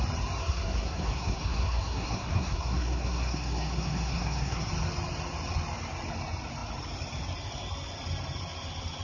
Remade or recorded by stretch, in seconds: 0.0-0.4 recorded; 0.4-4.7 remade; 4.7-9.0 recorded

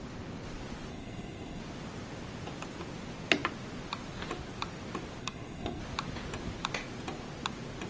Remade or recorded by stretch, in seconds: 0.0-0.9 recorded; 0.9-1.6 remade; 1.6-5.2 recorded; 5.2-5.8 remade; 5.8-7.9 recorded

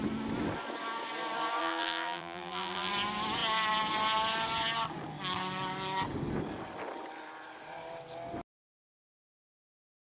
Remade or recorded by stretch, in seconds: 0.0-1.6 recorded; 1.6-2.9 remade; 2.9-10.0 recorded

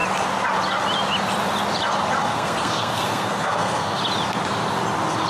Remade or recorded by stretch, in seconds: 0.0-2.2 recorded; 2.2-4.0 remade; 4.0-5.3 recorded